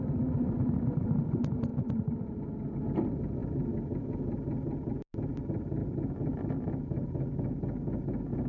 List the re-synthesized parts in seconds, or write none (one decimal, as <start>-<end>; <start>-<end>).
none